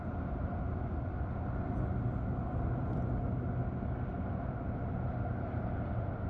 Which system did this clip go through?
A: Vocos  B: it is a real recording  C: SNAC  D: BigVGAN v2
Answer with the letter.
B